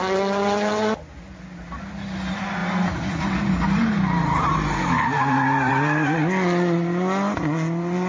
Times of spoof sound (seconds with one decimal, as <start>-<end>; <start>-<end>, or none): none